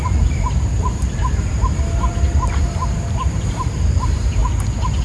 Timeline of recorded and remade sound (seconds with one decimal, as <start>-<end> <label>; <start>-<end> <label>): 0.0-4.4 remade; 4.4-5.0 recorded